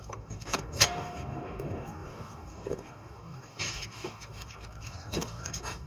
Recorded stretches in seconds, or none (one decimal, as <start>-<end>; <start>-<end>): none